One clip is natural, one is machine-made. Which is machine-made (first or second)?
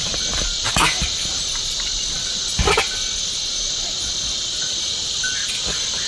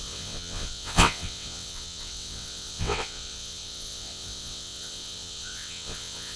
second